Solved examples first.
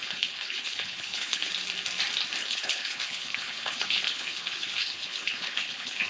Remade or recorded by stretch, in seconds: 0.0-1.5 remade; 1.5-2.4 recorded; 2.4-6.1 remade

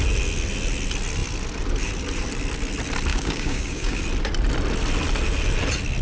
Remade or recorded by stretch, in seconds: 0.0-3.1 recorded; 3.1-4.0 remade; 4.0-6.0 recorded

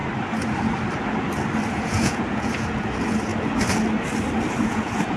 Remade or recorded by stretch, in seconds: 0.0-1.7 recorded; 1.7-3.3 remade; 3.3-4.6 recorded; 4.6-5.2 remade

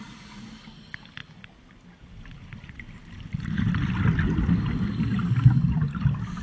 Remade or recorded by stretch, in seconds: 0.0-6.4 recorded

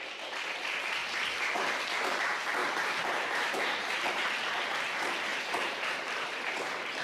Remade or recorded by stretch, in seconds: 0.0-1.0 recorded; 1.0-1.8 remade; 1.8-2.6 recorded; 2.6-4.3 remade; 4.3-5.3 recorded; 5.3-7.0 remade

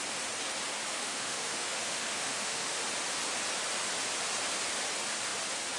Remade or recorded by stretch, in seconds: 0.0-0.9 recorded; 0.9-2.8 remade; 2.8-5.8 recorded

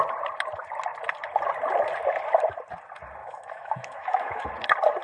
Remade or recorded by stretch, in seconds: 0.0-3.2 recorded; 3.2-4.5 remade; 4.5-5.0 recorded